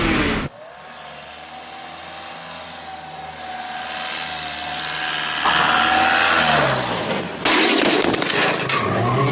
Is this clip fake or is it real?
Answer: real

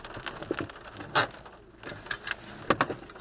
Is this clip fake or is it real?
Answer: real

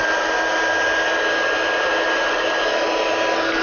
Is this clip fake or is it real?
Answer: real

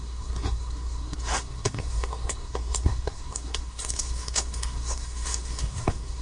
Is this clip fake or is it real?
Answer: fake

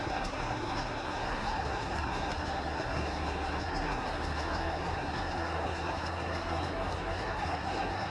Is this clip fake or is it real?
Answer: fake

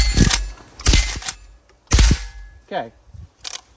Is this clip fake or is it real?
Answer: real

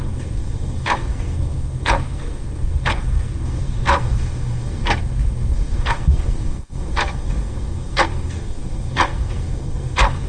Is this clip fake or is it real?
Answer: fake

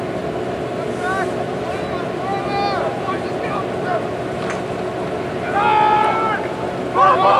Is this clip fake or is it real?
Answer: real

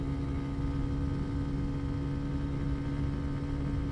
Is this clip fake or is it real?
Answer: real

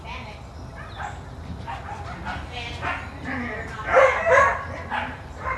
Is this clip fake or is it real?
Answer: real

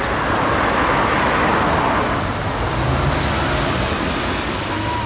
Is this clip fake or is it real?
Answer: real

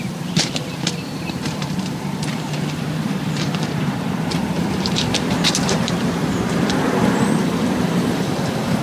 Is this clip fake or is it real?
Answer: fake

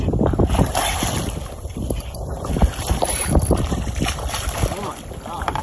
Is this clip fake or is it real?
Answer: fake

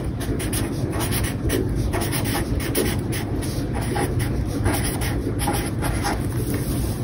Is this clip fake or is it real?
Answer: real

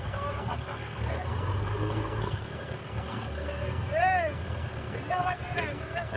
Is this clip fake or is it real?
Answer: fake